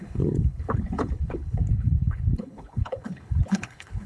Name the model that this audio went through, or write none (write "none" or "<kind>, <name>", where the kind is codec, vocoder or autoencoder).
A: codec, HILCodec